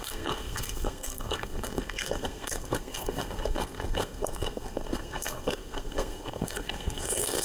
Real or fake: fake